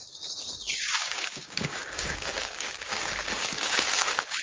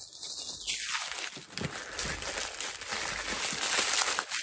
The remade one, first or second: first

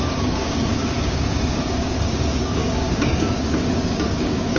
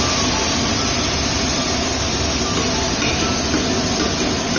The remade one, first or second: first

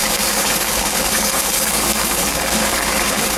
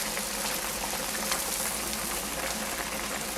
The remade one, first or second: first